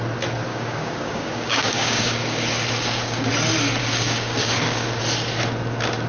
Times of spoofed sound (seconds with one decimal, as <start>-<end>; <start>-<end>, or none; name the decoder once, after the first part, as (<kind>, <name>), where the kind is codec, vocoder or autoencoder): 0.5-3.3 (codec, DAC); 3.8-5.0